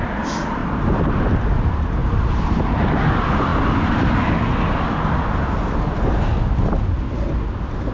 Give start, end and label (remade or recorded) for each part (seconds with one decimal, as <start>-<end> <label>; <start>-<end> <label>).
0.0-0.6 recorded; 0.6-1.3 remade; 1.3-2.0 recorded; 2.0-2.8 remade; 2.8-7.9 recorded